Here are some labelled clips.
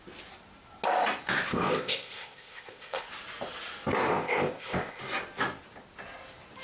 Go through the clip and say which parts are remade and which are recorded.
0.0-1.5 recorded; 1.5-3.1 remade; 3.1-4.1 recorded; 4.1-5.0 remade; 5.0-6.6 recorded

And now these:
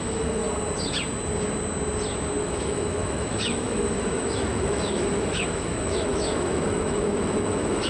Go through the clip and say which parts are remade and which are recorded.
0.0-0.4 remade; 0.4-2.4 recorded; 2.4-7.9 remade

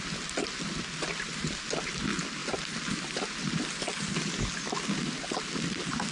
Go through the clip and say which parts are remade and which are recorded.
0.0-6.1 recorded